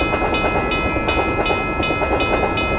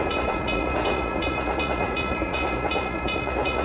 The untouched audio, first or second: first